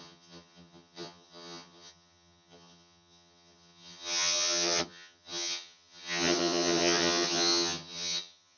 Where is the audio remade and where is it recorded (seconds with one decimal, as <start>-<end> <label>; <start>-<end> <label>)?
0.0-8.6 remade